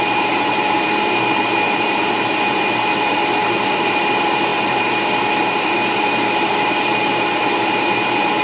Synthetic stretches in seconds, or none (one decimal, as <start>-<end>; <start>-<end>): 0.0-8.4